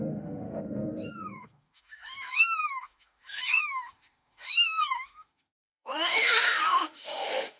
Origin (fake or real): fake